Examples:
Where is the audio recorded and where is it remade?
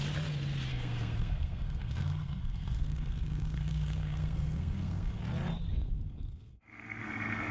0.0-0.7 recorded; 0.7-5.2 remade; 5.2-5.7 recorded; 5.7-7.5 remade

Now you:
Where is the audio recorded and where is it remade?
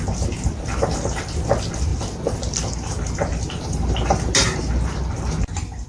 0.0-5.9 recorded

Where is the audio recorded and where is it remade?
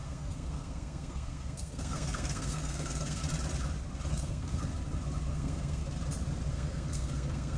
0.0-3.2 remade; 3.2-4.1 recorded; 4.1-4.7 remade; 4.7-5.3 recorded; 5.3-5.8 remade; 5.8-6.5 recorded; 6.5-7.6 remade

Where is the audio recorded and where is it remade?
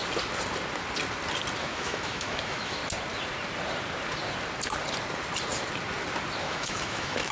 0.0-1.6 recorded; 1.6-2.8 remade; 2.8-6.4 recorded; 6.4-7.3 remade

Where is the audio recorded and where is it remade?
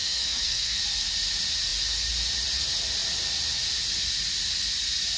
0.0-0.8 remade; 0.8-5.2 recorded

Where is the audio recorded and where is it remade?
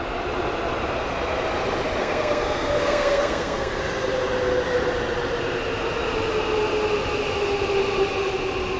0.0-2.0 recorded; 2.0-3.8 remade; 3.8-8.8 recorded